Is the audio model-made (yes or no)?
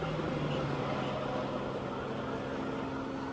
no